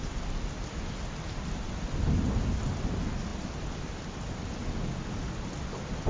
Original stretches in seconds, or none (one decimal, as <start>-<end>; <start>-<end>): 0.0-6.1